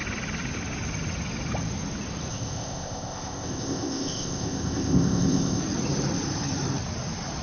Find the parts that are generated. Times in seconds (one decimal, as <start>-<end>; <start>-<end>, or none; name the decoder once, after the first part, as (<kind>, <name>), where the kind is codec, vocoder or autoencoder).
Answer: 2.3-5.6 (codec, ZipCodec)